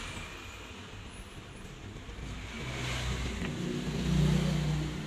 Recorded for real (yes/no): yes